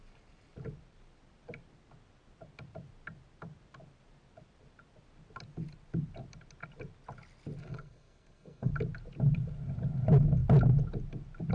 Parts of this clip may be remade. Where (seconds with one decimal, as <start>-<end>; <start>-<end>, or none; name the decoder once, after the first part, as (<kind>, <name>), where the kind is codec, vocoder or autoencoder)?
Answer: 7.6-8.7 (codec, SNAC)

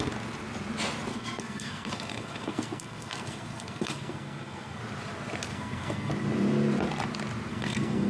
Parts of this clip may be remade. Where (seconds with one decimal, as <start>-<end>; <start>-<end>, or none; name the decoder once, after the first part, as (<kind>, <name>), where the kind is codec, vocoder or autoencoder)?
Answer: 1.1-4.8 (codec, SNAC); 5.5-6.1; 7.5-8.1

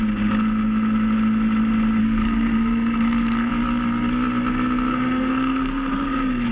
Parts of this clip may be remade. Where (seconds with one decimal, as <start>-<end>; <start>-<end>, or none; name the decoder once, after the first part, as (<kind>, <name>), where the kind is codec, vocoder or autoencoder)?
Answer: 2.0-3.5 (codec, SNAC); 4.9-6.5

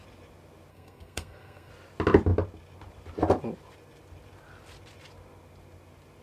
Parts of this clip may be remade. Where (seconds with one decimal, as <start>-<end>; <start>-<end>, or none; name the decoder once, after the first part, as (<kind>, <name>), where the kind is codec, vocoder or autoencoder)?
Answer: 0.7-1.7 (codec, SNAC)